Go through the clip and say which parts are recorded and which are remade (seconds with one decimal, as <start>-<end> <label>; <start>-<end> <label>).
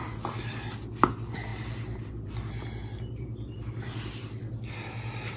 0.0-1.5 recorded; 1.5-4.7 remade; 4.7-5.4 recorded